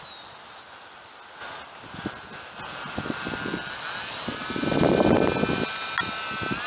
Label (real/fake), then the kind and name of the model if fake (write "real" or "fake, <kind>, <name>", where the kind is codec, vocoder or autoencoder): real